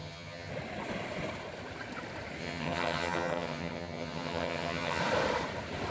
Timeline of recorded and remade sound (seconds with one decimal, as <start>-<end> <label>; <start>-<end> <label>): 0.0-0.5 remade; 0.5-2.4 recorded; 2.4-5.0 remade; 5.0-5.9 recorded